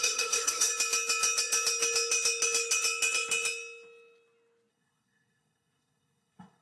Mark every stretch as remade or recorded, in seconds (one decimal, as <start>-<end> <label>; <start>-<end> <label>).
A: 0.0-0.7 remade; 0.7-4.7 recorded; 4.7-6.6 remade